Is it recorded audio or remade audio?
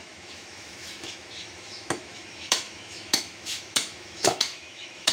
remade